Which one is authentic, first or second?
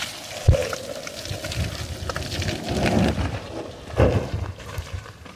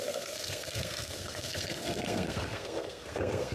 first